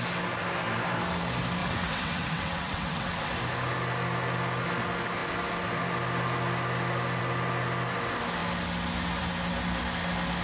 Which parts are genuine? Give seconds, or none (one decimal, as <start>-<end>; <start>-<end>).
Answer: 0.0-1.6; 3.3-10.4